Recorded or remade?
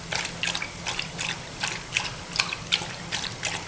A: recorded